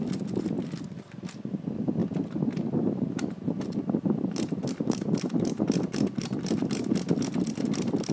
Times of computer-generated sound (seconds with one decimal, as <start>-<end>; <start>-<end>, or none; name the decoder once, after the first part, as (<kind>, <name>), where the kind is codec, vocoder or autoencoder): none

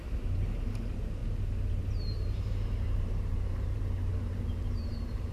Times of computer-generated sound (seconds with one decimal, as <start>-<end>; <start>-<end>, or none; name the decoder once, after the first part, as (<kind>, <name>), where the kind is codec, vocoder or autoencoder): 0.0-1.2 (vocoder, BigVGAN v2); 1.7-5.3